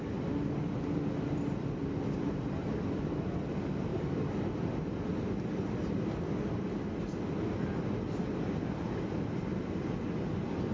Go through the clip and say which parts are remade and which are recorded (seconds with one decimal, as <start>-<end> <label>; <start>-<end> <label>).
0.0-10.7 recorded

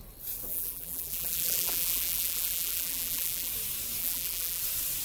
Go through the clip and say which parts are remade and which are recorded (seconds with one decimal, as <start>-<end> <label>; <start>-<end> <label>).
0.0-0.5 recorded; 0.5-3.5 remade; 3.5-4.0 recorded; 4.0-4.6 remade; 4.6-5.0 recorded

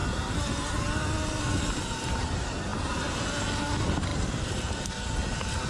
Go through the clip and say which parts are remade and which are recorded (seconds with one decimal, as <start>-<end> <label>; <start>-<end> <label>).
0.0-4.1 recorded; 4.1-4.9 remade; 4.9-5.7 recorded

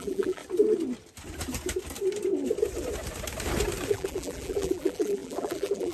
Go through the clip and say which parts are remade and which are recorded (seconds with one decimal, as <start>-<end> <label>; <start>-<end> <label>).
0.0-0.4 remade; 0.4-3.9 recorded; 3.9-5.9 remade

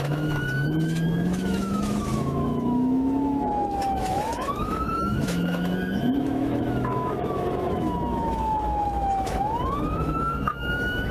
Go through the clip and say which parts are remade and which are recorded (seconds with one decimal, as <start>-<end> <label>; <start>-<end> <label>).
0.0-11.1 remade

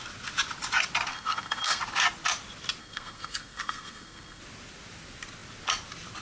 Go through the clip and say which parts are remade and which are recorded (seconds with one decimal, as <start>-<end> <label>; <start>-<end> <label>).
0.0-1.1 recorded; 1.1-1.8 remade; 1.8-2.8 recorded; 2.8-4.4 remade; 4.4-6.2 recorded

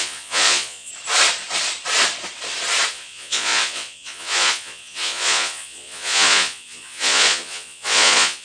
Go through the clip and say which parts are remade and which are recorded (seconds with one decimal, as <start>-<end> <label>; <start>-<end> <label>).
0.0-0.9 remade; 0.9-2.9 recorded; 2.9-8.4 remade

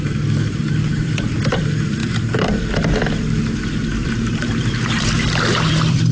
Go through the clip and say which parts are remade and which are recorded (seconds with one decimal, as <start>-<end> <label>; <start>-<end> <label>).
0.0-6.1 remade